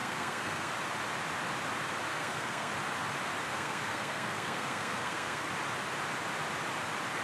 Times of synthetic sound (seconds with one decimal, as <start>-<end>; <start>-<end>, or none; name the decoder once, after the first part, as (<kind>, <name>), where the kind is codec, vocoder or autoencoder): 0.0-0.7 (codec, SNAC); 2.1-2.7; 3.5-5.5